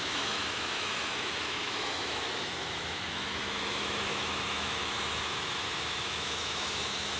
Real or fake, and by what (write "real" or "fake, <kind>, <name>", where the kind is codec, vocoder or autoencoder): fake, autoencoder, DAC-VAE